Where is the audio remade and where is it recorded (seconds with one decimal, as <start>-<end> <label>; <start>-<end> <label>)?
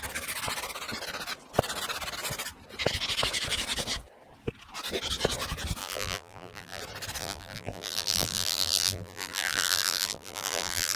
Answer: 0.0-5.8 recorded; 5.8-6.8 remade; 6.8-7.2 recorded; 7.2-11.0 remade